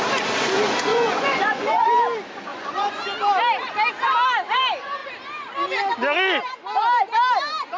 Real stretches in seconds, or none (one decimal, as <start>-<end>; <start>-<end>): 0.0-0.9; 1.9-2.5; 3.0-7.8